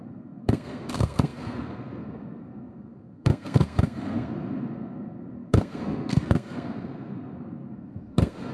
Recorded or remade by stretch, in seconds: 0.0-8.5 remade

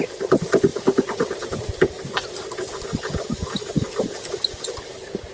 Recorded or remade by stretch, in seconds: 0.0-5.3 recorded

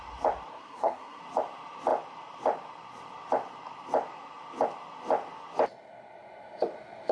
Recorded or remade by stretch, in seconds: 0.0-0.5 recorded; 0.5-1.2 remade; 1.2-7.1 recorded

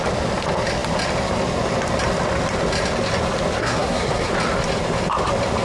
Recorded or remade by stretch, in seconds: 0.0-3.6 recorded; 3.6-4.3 remade; 4.3-5.6 recorded

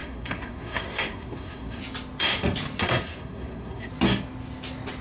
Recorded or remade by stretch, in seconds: 0.0-1.8 remade; 1.8-2.8 recorded; 2.8-3.9 remade; 3.9-5.0 recorded